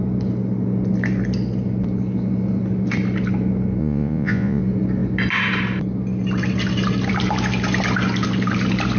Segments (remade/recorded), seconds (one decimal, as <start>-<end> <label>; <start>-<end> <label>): 0.0-3.8 recorded; 3.8-4.6 remade; 4.6-9.0 recorded